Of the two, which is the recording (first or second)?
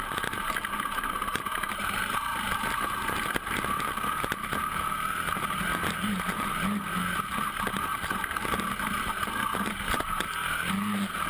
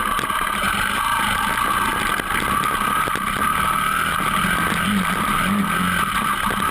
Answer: second